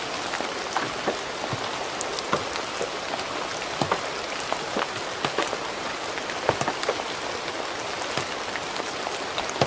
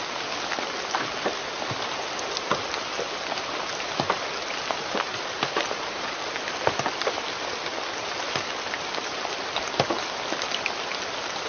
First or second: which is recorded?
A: first